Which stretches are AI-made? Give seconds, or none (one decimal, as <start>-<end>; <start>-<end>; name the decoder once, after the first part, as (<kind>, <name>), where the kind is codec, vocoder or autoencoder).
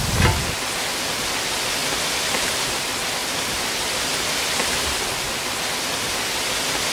1.8-2.5 (vocoder, BigVGAN v2); 3.2-4.2